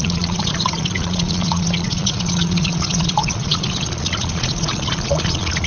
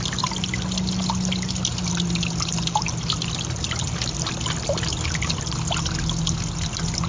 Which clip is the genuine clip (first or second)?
second